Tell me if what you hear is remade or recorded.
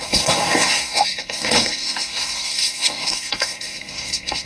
remade